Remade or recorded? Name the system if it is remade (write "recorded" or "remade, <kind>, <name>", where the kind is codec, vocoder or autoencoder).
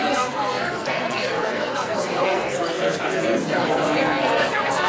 remade, codec, SNAC